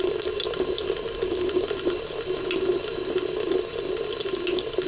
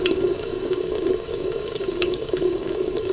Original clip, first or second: first